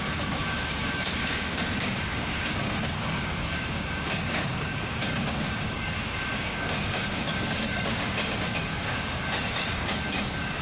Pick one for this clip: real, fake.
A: fake